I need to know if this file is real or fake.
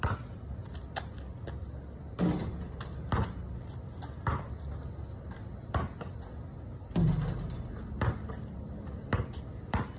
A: real